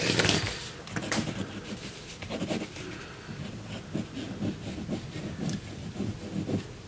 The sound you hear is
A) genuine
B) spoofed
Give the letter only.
A